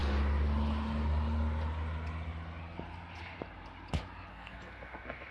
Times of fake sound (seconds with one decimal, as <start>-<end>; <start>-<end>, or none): 4.3-5.3

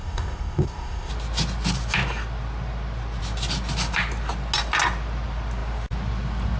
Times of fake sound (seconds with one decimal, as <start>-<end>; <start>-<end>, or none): 0.0-1.1

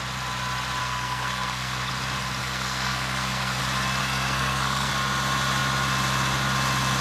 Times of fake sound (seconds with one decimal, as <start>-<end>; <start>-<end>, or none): 0.8-1.9; 2.4-3.6; 4.0-4.9

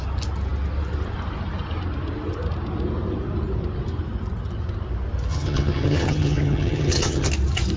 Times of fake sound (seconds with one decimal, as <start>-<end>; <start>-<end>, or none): 5.3-7.3

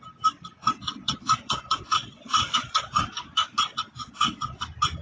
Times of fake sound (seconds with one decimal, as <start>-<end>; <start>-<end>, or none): 0.6-3.6; 4.0-4.6

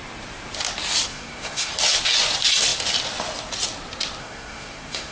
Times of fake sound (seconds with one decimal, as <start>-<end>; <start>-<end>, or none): 1.1-1.7; 4.2-5.1